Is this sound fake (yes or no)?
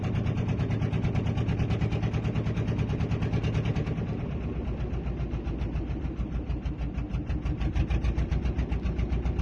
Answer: no